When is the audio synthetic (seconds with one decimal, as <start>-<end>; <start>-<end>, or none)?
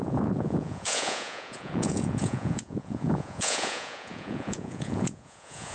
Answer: 0.0-5.7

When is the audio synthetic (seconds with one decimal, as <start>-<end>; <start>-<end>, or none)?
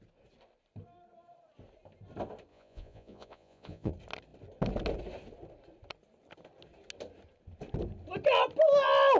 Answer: 2.5-3.9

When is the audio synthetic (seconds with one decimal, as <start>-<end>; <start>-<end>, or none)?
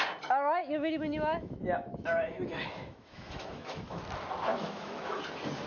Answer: 0.6-4.0; 4.5-5.2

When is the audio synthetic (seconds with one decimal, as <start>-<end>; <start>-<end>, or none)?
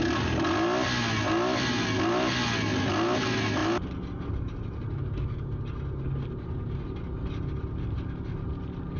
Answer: none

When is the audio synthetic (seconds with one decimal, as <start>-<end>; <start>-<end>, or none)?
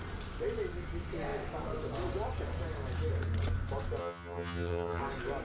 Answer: 4.0-5.0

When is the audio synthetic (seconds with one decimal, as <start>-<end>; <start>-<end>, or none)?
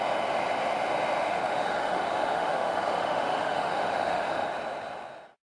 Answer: 1.2-4.5